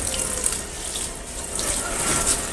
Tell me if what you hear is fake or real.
real